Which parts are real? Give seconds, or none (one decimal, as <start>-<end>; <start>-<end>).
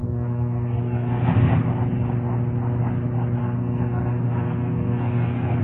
1.3-3.4